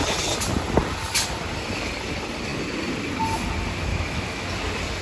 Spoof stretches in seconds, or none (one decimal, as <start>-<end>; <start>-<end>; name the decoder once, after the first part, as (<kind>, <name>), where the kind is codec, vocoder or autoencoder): 3.9-4.5 (autoencoder, DAC-VAE)